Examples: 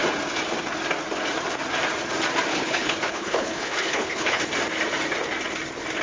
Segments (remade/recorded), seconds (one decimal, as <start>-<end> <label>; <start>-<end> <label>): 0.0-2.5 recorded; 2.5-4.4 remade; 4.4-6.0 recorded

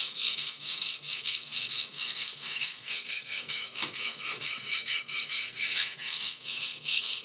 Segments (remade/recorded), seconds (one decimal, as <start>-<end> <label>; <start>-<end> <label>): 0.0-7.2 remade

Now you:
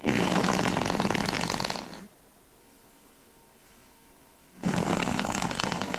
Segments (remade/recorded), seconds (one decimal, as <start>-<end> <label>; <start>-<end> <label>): 0.0-0.5 remade; 0.5-2.6 recorded; 2.6-6.0 remade

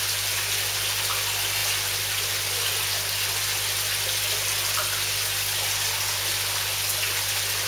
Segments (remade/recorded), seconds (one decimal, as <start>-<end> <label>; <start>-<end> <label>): 0.0-7.7 recorded

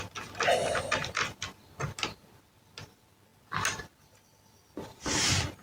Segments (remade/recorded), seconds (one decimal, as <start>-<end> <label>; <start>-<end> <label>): 0.0-5.6 recorded

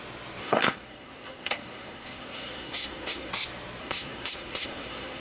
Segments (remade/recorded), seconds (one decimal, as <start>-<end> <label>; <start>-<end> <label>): 0.0-0.4 recorded; 0.4-3.3 remade; 3.3-3.8 recorded; 3.8-5.2 remade